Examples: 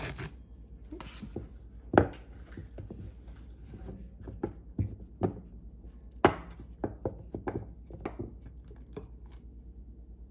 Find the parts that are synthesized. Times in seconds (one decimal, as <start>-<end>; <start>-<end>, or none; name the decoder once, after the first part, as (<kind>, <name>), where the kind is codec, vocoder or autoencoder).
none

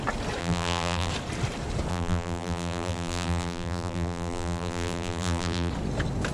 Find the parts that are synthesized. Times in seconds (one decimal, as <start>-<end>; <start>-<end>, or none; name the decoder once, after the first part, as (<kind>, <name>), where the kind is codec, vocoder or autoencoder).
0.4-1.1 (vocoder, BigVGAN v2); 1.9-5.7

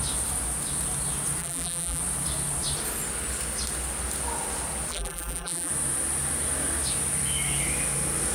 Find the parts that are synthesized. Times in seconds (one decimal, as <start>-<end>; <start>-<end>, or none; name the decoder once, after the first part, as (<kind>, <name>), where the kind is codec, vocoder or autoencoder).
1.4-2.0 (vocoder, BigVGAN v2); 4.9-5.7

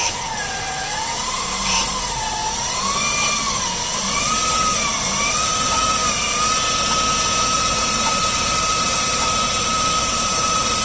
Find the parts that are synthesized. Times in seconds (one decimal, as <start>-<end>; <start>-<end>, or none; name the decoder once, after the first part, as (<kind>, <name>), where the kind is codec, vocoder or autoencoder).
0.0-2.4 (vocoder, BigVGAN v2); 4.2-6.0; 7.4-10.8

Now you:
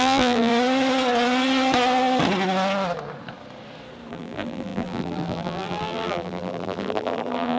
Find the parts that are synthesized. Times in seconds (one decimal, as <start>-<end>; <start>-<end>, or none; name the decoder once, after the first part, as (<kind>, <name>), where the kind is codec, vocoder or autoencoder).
0.0-0.5 (vocoder, BigVGAN v2); 4.1-7.6

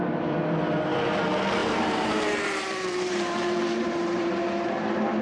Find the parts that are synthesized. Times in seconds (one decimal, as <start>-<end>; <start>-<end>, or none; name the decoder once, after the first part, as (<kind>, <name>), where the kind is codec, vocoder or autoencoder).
1.6-4.7 (vocoder, BigVGAN v2)

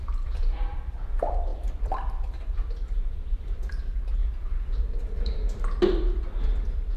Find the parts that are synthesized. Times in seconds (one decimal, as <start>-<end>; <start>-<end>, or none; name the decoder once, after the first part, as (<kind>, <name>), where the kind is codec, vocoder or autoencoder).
0.0-4.2 (vocoder, BigVGAN v2); 4.8-5.8